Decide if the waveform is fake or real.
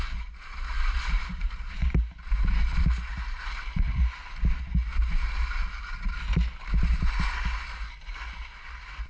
real